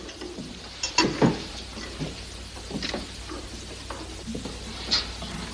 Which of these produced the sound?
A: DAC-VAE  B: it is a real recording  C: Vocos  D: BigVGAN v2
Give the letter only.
B